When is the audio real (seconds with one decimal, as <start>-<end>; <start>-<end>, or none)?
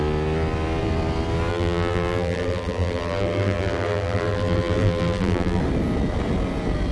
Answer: 0.0-1.5; 5.6-6.9